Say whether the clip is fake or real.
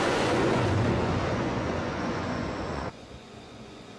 fake